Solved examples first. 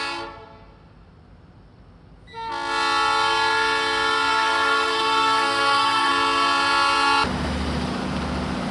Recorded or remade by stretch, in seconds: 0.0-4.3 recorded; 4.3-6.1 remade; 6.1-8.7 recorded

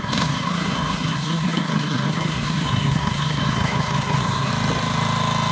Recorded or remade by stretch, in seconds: 0.0-4.5 remade; 4.5-5.5 recorded

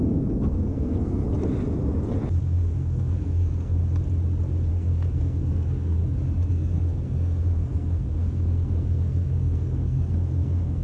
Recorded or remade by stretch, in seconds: 0.0-1.2 remade; 1.2-2.4 recorded; 2.4-3.8 remade; 3.8-4.7 recorded; 4.7-6.0 remade; 6.0-6.5 recorded; 6.5-10.8 remade

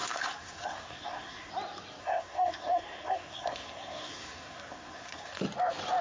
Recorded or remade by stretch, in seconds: 0.0-1.5 remade; 1.5-2.0 recorded; 2.0-5.4 remade; 5.4-6.0 recorded